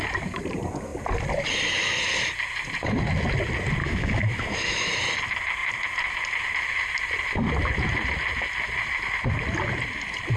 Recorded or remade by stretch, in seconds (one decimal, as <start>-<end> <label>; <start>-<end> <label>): 0.0-3.8 recorded; 3.8-4.9 remade; 4.9-10.4 recorded

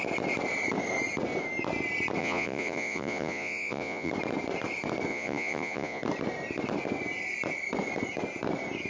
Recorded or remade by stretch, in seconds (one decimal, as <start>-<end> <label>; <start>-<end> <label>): 0.0-2.2 recorded; 2.2-4.1 remade; 4.1-5.1 recorded; 5.1-6.0 remade; 6.0-8.9 recorded

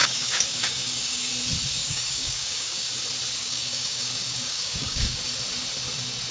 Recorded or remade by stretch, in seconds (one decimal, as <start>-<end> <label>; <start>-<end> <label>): 0.0-1.3 remade; 1.3-1.8 recorded; 1.8-2.9 remade; 2.9-3.4 recorded; 3.4-5.2 remade; 5.2-6.3 recorded